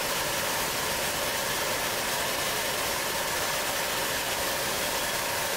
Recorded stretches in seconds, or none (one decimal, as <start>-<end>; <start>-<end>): 0.0-1.3; 4.7-5.6